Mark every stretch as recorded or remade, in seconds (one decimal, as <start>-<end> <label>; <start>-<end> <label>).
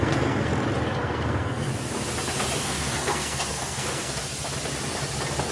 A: 0.0-0.5 remade; 0.5-1.0 recorded; 1.0-1.7 remade; 1.7-2.6 recorded; 2.6-4.2 remade; 4.2-5.5 recorded